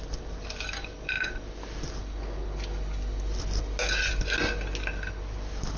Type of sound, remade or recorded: recorded